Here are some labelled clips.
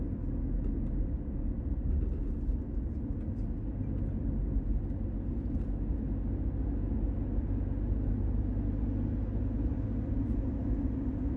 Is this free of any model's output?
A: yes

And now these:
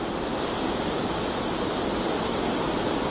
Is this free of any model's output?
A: yes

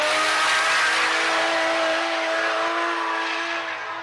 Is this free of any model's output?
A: yes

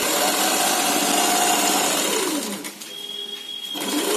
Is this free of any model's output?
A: yes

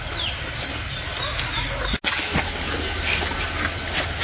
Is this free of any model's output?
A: yes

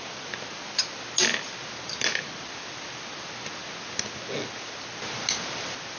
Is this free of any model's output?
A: yes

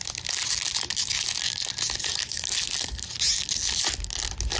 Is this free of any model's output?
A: yes